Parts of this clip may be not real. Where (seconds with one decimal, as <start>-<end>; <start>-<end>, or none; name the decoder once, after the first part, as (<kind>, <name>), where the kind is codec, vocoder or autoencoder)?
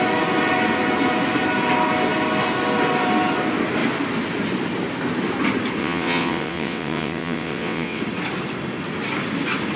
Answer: 5.8-8.0 (vocoder, WaveNeXt)